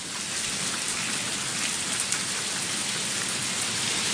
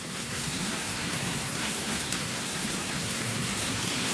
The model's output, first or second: second